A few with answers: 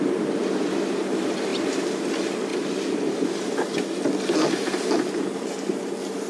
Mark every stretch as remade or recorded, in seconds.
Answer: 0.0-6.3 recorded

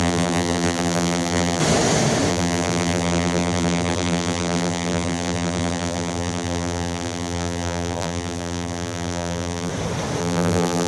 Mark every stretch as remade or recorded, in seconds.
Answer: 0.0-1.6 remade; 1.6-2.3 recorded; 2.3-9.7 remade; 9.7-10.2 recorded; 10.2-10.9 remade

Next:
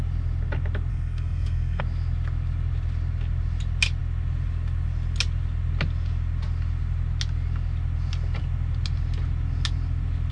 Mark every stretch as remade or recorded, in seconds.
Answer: 0.0-0.9 recorded; 0.9-1.8 remade; 1.8-10.3 recorded

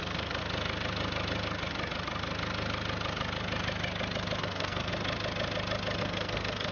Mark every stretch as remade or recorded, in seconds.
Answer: 0.0-0.4 remade; 0.4-4.4 recorded; 4.4-4.9 remade; 4.9-6.0 recorded; 6.0-6.7 remade

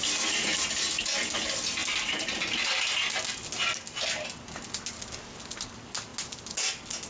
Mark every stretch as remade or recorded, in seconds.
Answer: 0.0-1.8 recorded; 1.8-2.4 remade; 2.4-3.7 recorded; 3.7-4.6 remade; 4.6-7.1 recorded